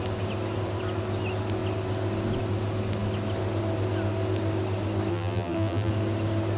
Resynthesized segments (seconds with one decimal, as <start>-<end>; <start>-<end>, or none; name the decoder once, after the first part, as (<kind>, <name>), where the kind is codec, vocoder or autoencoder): 5.1-5.9 (vocoder, BigVGAN v2)